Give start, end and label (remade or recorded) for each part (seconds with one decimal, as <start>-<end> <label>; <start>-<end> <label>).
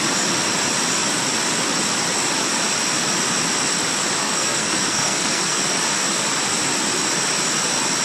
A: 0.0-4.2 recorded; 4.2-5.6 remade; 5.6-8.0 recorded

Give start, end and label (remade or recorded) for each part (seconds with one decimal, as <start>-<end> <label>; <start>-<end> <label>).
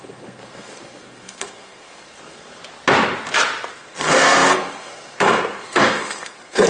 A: 0.0-2.6 remade; 2.6-3.7 recorded; 3.7-6.7 remade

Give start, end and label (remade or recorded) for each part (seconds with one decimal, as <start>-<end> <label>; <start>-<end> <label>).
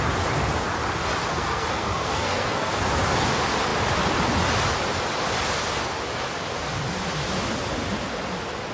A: 0.0-1.3 recorded; 1.3-2.7 remade; 2.7-8.7 recorded